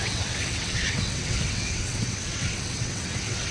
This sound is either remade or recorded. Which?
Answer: remade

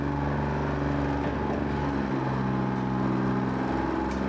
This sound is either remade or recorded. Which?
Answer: recorded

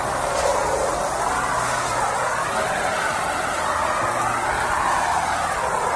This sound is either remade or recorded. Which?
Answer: recorded